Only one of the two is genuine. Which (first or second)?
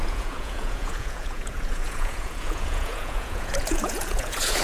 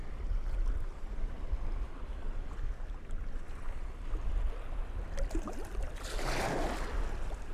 second